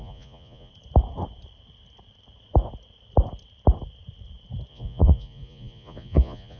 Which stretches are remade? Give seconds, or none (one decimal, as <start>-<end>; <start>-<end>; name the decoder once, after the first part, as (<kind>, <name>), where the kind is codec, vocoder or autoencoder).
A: 0.0-0.7 (vocoder, Vocos); 4.7-6.6